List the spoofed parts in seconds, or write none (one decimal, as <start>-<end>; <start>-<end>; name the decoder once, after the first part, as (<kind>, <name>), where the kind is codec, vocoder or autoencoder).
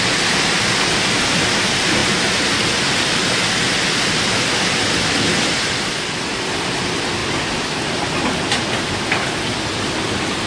none